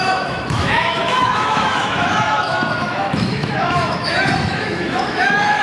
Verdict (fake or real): fake